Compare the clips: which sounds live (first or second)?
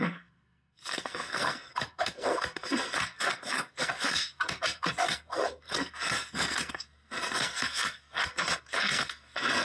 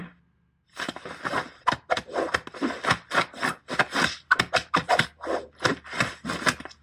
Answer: second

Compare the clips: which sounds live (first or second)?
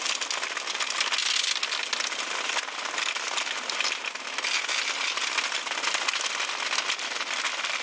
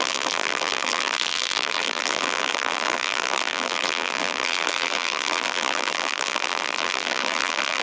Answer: first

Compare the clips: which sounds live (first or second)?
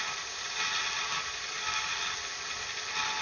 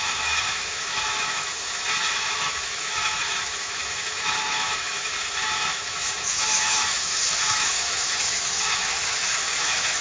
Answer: first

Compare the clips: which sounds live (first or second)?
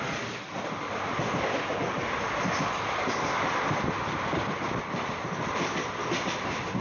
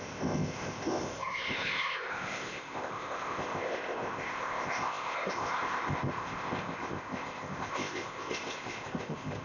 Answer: first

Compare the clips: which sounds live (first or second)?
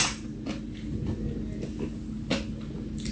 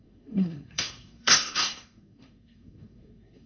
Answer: first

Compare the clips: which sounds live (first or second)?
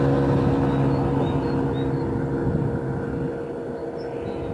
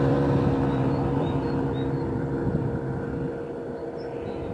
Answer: first